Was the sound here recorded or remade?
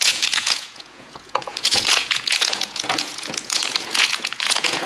remade